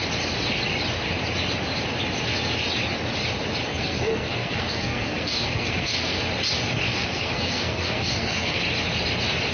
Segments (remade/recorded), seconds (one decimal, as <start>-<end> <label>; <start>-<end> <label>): 0.0-3.7 recorded; 3.7-6.2 remade; 6.2-6.9 recorded; 6.9-8.6 remade; 8.6-9.5 recorded